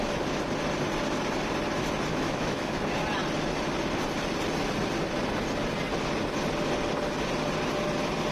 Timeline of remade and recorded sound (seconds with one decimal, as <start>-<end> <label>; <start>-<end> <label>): 0.0-2.1 recorded; 2.1-2.8 remade; 2.8-8.3 recorded